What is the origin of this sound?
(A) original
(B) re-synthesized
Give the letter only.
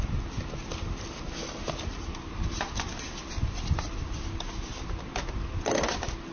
A